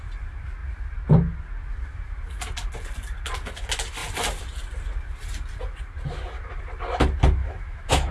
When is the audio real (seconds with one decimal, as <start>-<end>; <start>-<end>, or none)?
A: 0.0-7.4